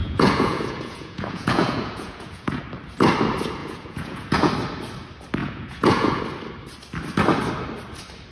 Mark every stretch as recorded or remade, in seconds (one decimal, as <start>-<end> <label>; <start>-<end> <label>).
0.0-2.6 remade; 2.6-3.6 recorded; 3.6-4.5 remade; 4.5-5.4 recorded; 5.4-6.2 remade; 6.2-8.3 recorded